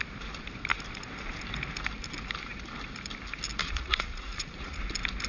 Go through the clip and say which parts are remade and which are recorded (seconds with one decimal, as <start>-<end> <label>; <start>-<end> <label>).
0.0-3.6 recorded; 3.6-4.8 remade; 4.8-5.3 recorded